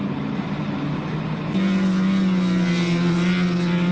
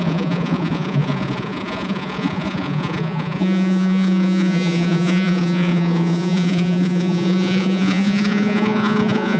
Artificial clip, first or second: second